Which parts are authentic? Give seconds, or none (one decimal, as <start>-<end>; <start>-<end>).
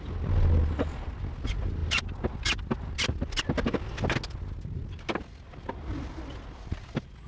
0.0-7.3